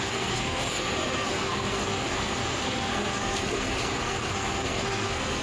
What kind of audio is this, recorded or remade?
remade